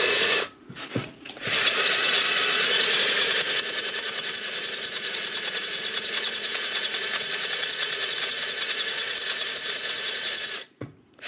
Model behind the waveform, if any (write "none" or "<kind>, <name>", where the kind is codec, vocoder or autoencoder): vocoder, Vocos